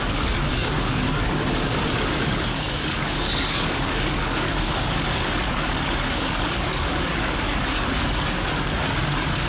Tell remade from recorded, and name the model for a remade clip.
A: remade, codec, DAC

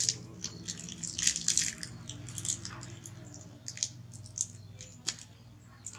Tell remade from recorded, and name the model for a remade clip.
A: recorded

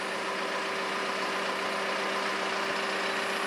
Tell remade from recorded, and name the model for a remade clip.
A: recorded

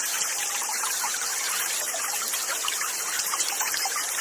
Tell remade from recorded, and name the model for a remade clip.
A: remade, vocoder, BigVGAN v2